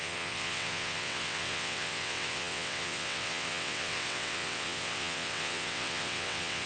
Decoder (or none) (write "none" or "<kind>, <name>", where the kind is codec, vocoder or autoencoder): vocoder, WaveNeXt